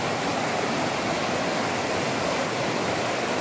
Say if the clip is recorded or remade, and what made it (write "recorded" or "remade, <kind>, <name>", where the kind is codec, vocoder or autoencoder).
recorded